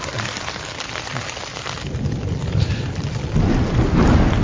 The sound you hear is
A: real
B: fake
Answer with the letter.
A